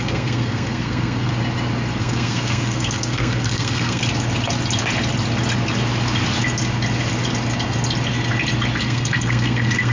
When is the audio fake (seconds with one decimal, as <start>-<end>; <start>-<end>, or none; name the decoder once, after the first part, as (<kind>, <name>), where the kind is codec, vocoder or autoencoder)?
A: 0.0-1.3 (codec, SNAC); 2.0-4.0; 8.8-9.9